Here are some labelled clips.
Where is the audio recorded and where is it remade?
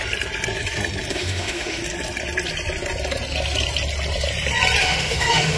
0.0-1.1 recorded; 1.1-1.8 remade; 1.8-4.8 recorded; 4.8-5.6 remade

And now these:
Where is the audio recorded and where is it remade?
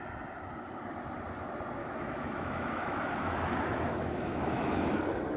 0.0-1.8 recorded; 1.8-5.0 remade; 5.0-5.4 recorded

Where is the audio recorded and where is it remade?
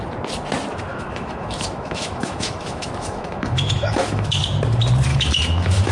0.0-0.9 recorded; 0.9-4.4 remade; 4.4-5.1 recorded; 5.1-5.9 remade